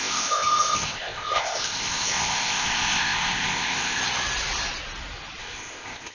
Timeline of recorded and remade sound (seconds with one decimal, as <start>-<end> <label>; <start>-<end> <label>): 0.0-4.0 remade; 4.0-5.4 recorded; 5.4-6.1 remade